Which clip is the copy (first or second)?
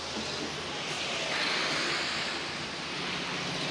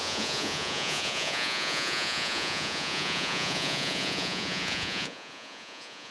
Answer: second